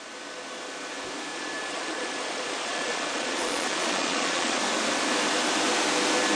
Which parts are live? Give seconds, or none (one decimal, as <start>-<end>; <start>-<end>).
0.0-1.3; 4.6-6.4